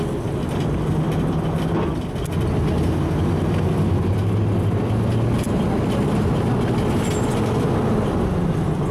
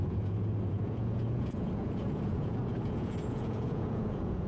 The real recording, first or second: first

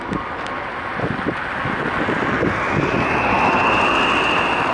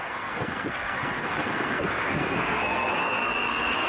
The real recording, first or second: first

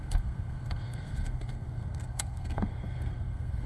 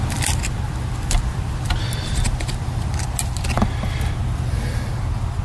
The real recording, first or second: second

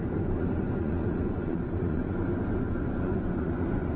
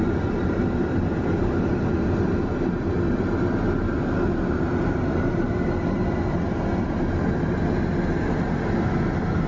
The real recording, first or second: second